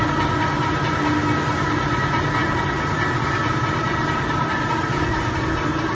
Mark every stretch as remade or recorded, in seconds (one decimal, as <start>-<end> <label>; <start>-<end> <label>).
0.0-2.4 recorded; 2.4-4.6 remade; 4.6-5.9 recorded